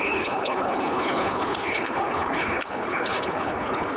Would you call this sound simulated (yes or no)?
yes